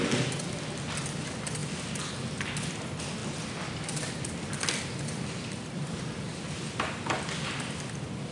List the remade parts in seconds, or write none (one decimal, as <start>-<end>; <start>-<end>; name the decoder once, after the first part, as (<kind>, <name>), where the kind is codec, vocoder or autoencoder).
none